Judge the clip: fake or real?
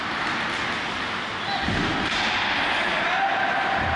real